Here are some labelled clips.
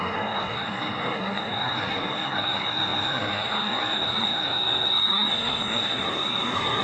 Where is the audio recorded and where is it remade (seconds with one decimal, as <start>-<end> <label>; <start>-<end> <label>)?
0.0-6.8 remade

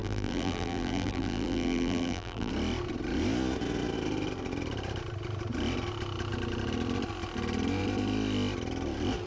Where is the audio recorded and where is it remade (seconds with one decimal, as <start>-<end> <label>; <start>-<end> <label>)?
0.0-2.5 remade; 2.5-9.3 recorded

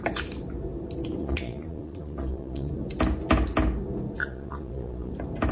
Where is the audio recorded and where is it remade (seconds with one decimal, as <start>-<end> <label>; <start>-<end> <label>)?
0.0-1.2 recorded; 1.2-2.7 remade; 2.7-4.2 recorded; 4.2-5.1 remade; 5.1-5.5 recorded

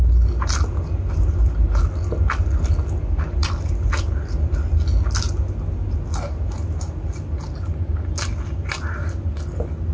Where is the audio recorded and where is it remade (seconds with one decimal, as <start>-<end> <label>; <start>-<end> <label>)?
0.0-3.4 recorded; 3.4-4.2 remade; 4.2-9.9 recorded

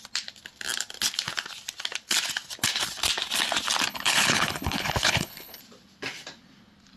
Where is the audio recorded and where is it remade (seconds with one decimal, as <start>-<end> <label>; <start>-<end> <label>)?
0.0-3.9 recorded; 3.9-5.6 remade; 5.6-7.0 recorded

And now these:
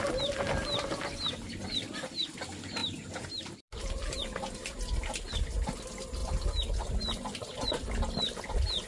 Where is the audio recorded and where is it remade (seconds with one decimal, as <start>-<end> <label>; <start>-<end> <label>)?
0.0-2.8 recorded; 2.8-4.2 remade; 4.2-8.9 recorded

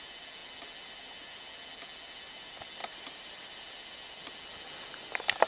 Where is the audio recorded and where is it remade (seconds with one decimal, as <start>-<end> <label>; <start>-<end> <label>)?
0.0-2.8 recorded; 2.8-3.6 remade; 3.6-5.5 recorded

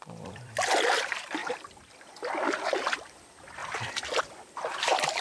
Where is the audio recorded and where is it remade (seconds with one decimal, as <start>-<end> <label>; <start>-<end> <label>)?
0.0-5.2 remade